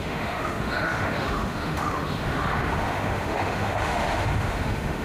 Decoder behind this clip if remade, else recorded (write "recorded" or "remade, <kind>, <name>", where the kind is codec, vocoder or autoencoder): remade, autoencoder, DAC-VAE